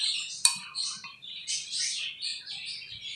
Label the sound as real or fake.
real